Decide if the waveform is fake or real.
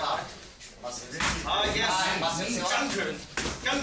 real